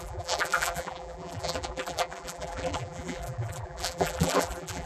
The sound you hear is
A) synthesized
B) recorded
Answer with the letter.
A